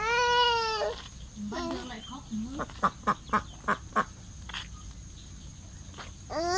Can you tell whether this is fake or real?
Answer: real